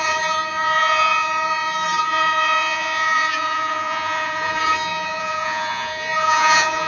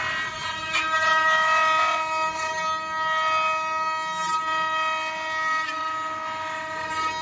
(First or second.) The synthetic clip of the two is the first